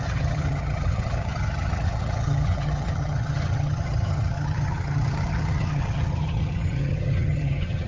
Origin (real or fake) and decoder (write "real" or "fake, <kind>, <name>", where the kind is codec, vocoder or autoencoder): fake, vocoder, HiFi-GAN